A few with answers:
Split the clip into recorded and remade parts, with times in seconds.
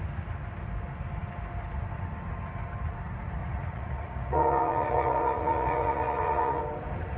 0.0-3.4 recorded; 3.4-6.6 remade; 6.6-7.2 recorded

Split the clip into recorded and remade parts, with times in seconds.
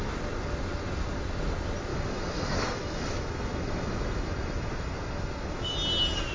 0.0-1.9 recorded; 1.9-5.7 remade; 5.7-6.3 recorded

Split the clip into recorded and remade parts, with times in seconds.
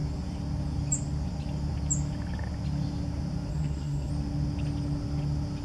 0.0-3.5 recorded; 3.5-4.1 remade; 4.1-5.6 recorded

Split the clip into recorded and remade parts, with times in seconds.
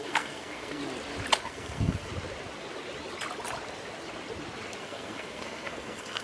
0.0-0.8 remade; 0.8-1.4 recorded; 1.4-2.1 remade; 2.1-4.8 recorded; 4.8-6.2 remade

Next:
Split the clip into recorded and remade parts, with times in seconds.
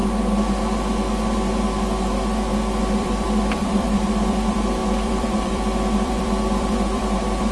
0.0-2.8 recorded; 2.8-7.5 remade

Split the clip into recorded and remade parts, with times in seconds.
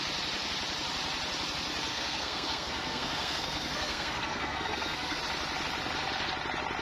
0.0-1.9 recorded; 1.9-5.2 remade; 5.2-6.8 recorded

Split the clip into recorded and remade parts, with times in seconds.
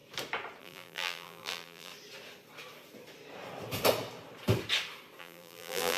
0.0-0.6 recorded; 0.6-1.9 remade; 1.9-5.2 recorded; 5.2-6.0 remade